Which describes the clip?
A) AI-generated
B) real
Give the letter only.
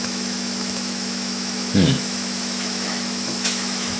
A